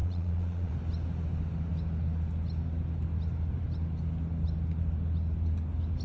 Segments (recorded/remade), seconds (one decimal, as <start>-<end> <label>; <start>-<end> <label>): 0.0-0.7 remade; 0.7-6.0 recorded